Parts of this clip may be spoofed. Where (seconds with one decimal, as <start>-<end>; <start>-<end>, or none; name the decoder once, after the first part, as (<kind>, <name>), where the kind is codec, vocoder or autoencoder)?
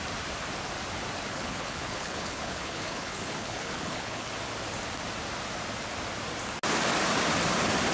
1.3-4.3 (codec, HILCodec)